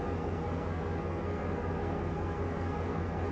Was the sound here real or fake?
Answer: fake